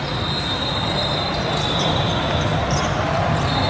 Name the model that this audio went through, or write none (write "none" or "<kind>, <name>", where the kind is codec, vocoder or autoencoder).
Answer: vocoder, BigVGAN v2